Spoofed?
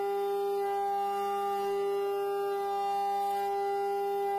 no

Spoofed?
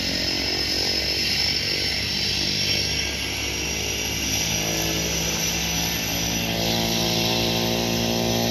no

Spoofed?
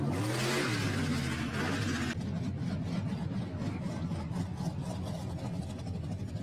no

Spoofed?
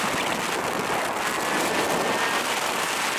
no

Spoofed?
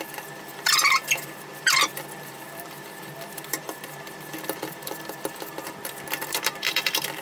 yes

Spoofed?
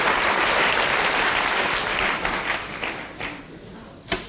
no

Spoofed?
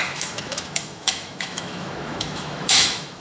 yes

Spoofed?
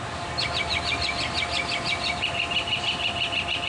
yes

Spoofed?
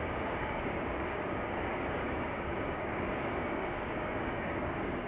yes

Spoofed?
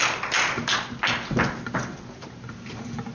no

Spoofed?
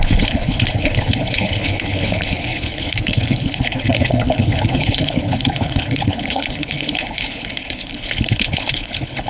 yes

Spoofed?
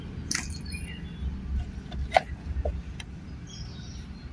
no